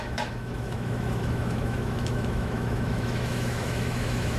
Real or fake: fake